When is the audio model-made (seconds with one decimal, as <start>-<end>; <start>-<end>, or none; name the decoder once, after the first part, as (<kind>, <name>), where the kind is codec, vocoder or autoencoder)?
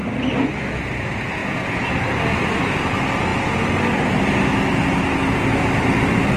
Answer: 1.4-1.9 (vocoder, Vocos)